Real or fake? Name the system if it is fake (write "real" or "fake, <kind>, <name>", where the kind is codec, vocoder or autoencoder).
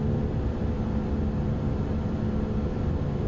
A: real